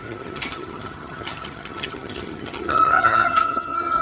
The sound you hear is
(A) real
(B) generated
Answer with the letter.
B